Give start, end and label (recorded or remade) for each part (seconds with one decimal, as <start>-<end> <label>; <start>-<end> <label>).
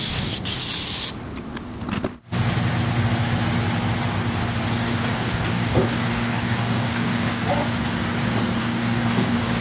0.0-0.6 remade; 0.6-4.7 recorded; 4.7-7.4 remade; 7.4-8.6 recorded; 8.6-9.6 remade